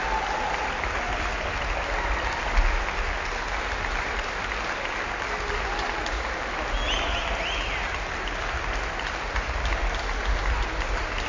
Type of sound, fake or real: real